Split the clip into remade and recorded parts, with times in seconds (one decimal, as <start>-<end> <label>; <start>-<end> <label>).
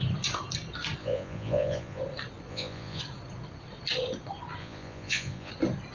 0.0-1.0 recorded; 1.0-2.0 remade; 2.0-2.5 recorded; 2.5-3.0 remade; 3.0-4.6 recorded; 4.6-5.5 remade; 5.5-5.9 recorded